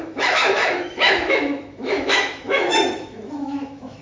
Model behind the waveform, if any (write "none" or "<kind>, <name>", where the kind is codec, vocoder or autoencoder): autoencoder, DAC-VAE